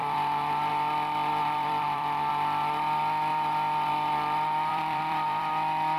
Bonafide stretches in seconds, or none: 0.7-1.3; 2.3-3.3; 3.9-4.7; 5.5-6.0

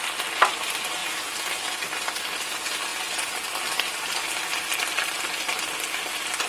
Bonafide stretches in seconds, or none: 0.0-1.0; 1.6-2.9; 6.1-6.5

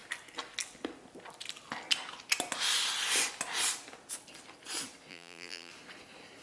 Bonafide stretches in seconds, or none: 0.0-5.1; 5.7-6.4

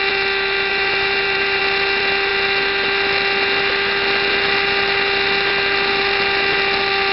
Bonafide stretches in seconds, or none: 0.0-0.7; 1.6-7.1

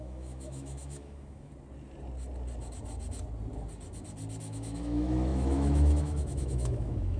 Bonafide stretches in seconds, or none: 1.5-4.4

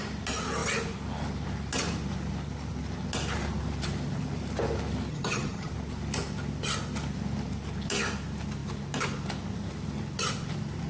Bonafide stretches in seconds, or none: 0.0-5.1; 5.7-10.9

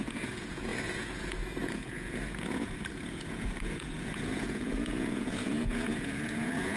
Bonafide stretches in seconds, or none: none

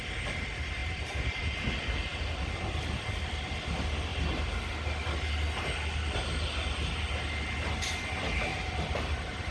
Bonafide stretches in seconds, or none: 0.0-0.8; 1.4-8.5